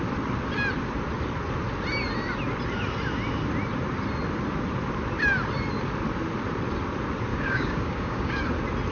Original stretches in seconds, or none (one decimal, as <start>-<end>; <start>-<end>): 0.0-7.3; 8.4-8.9